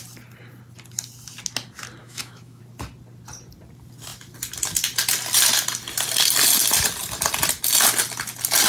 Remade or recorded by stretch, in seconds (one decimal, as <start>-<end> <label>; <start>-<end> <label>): 0.0-2.0 recorded; 2.0-2.6 remade; 2.6-8.7 recorded